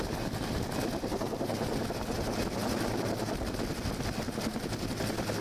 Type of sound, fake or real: real